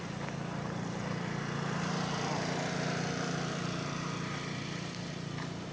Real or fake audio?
real